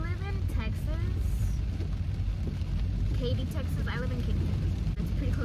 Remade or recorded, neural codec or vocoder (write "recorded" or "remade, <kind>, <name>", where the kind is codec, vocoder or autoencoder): recorded